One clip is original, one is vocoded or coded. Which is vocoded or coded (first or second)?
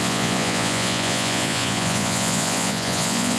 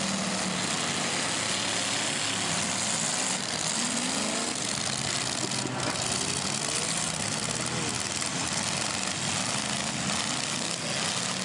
first